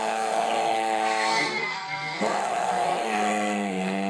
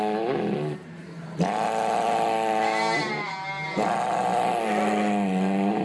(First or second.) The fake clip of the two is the first